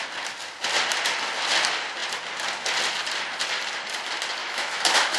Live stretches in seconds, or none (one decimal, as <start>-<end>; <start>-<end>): 0.0-4.4

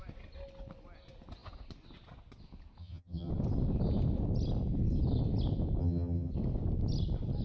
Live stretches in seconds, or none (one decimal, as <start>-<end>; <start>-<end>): 0.0-2.8; 3.3-5.8; 6.3-7.4

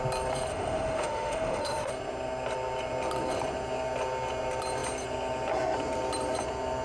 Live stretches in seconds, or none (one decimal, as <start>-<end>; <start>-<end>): 0.0-0.5; 1.9-6.8

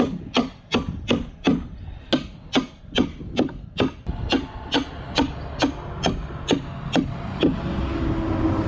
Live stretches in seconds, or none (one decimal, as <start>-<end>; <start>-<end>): 0.0-8.7